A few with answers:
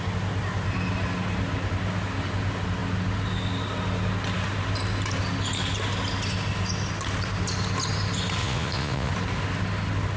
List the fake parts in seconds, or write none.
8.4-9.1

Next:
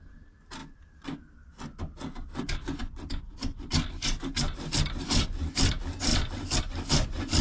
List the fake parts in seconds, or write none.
none

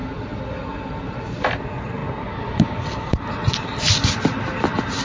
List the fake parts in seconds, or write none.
none

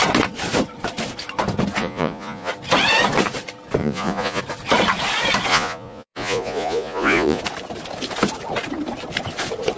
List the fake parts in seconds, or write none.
1.8-2.5; 3.8-4.4; 5.5-7.4

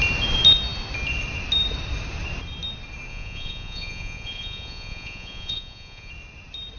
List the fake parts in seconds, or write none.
3.1-6.1

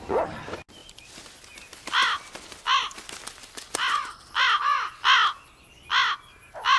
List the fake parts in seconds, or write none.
none

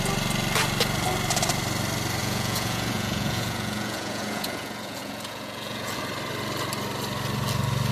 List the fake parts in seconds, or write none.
2.2-6.0